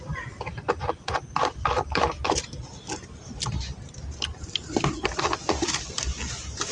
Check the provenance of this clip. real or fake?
real